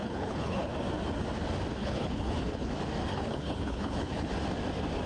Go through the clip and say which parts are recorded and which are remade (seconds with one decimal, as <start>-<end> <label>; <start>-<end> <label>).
0.0-0.7 remade; 0.7-1.8 recorded; 1.8-2.7 remade; 2.7-3.1 recorded; 3.1-4.3 remade; 4.3-5.1 recorded